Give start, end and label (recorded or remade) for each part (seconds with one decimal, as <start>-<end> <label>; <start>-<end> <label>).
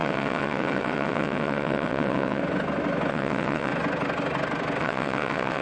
0.0-2.4 remade; 2.4-3.1 recorded; 3.1-3.7 remade; 3.7-4.8 recorded; 4.8-5.6 remade